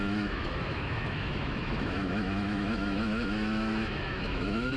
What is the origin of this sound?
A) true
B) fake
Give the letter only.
B